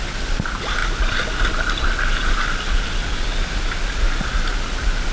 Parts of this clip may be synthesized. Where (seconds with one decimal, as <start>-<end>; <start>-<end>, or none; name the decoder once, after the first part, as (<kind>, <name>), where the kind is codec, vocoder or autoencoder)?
none